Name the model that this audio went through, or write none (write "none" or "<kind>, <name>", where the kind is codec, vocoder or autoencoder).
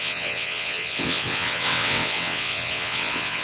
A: vocoder, WaveNeXt